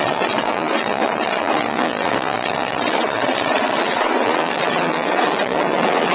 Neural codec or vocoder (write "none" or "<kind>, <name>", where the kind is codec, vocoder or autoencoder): vocoder, Vocos